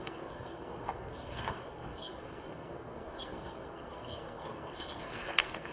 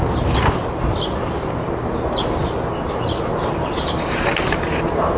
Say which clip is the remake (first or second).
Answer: first